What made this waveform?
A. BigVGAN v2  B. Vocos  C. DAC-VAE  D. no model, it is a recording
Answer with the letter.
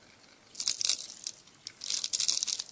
D